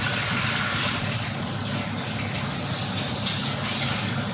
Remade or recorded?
recorded